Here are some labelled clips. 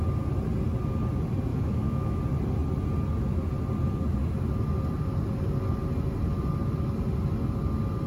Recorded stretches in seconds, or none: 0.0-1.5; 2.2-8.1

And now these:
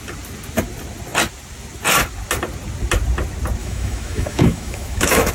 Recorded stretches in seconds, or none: 0.0-3.6

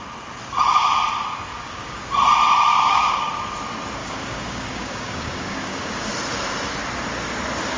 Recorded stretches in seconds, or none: 0.0-1.5; 2.0-2.7; 3.3-4.0; 6.1-7.8

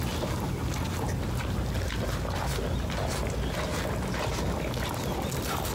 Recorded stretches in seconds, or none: 0.0-5.7

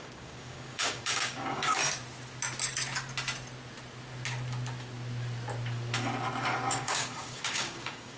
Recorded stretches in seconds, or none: 1.8-6.7

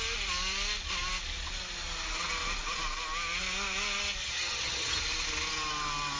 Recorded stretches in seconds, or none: 0.0-4.2; 5.0-6.2

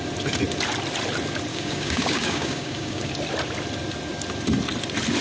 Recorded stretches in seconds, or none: 0.0-1.5; 3.1-5.2

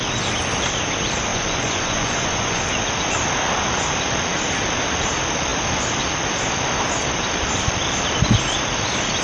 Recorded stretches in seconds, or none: 0.0-1.3; 2.6-9.2